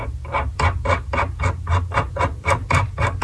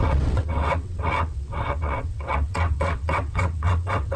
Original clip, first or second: first